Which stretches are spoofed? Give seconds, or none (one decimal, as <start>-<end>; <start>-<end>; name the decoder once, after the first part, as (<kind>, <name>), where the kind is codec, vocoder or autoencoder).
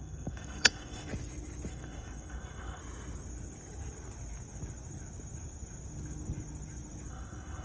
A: 0.0-1.1 (codec, SNAC); 1.7-2.8; 7.1-7.6